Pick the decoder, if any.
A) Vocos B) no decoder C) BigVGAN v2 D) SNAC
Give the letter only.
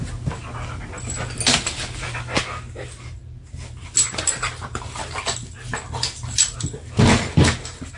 B